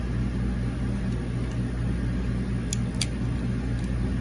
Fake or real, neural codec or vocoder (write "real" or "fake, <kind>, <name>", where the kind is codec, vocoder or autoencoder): real